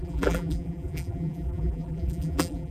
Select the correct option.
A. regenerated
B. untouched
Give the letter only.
A